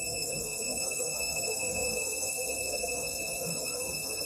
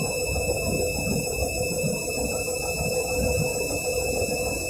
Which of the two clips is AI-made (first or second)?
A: first